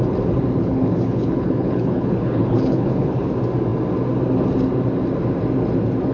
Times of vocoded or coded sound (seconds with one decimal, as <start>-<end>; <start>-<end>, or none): 0.6-3.3